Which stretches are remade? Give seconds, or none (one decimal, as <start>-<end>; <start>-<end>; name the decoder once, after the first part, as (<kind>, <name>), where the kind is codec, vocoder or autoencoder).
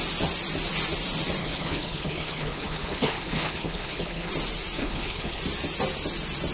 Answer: 1.4-4.3 (codec, HILCodec); 4.8-5.4